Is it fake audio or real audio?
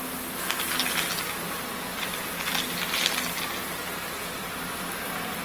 real